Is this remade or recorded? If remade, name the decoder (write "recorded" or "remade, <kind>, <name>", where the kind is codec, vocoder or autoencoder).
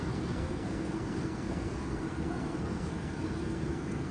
remade, codec, SNAC